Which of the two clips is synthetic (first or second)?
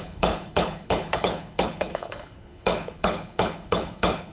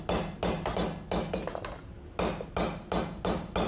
first